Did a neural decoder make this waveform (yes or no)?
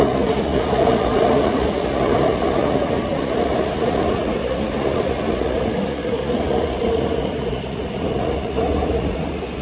yes